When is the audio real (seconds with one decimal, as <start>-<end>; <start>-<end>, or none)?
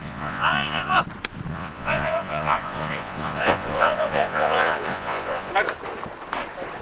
1.0-1.5; 5.5-6.8